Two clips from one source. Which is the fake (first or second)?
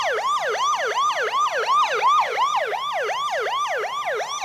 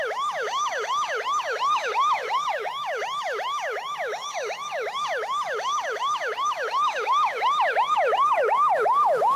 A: second